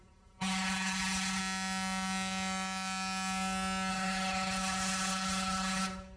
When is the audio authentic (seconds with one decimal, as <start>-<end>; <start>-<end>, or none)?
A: 1.4-3.9